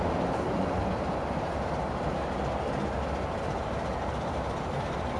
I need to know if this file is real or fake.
fake